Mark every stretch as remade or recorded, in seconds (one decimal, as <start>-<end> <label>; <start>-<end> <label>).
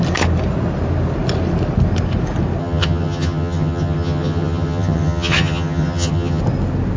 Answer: 0.0-2.6 recorded; 2.6-6.4 remade; 6.4-7.0 recorded